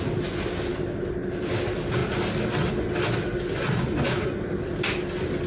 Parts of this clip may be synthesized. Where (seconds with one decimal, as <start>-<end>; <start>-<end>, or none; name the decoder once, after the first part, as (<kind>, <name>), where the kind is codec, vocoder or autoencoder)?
none